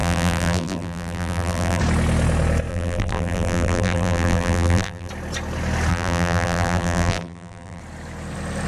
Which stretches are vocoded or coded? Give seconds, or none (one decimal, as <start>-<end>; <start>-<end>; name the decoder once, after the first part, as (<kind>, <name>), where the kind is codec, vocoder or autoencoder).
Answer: 0.0-1.8 (vocoder, BigVGAN v2); 2.7-5.1; 5.9-7.8

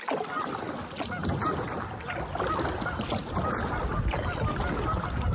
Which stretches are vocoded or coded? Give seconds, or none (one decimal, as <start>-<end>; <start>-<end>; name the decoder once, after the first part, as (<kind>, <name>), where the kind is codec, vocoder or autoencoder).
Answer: none

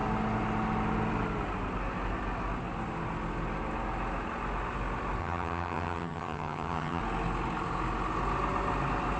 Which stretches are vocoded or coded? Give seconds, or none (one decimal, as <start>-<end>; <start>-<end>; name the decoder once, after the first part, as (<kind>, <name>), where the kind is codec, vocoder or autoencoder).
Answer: 5.2-7.0 (vocoder, HiFi-GAN)

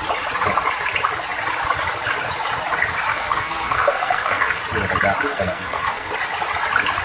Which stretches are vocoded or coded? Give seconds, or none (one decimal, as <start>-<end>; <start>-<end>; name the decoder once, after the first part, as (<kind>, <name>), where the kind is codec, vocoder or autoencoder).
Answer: 3.1-4.6 (codec, SNAC); 5.3-6.1

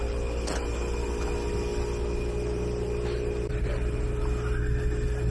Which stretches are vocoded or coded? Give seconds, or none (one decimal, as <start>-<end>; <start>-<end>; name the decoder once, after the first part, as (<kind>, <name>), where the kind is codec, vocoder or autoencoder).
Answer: none

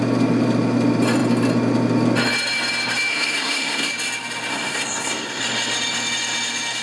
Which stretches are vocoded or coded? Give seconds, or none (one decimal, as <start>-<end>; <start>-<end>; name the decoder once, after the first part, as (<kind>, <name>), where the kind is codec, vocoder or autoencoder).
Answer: 3.1-3.9 (codec, SNAC); 4.5-5.4

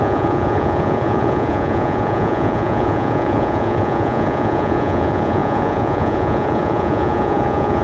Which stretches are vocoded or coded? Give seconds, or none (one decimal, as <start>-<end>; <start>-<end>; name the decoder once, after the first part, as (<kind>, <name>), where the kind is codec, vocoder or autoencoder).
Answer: 0.0-7.8 (vocoder, Vocos)

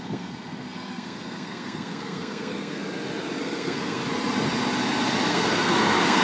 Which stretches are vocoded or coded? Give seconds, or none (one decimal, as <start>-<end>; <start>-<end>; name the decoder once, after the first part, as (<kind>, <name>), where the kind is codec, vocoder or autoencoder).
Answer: 0.0-2.8 (codec, SNAC); 3.4-4.0; 5.3-6.2